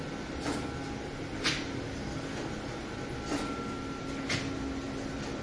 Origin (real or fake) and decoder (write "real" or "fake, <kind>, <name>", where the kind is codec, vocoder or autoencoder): real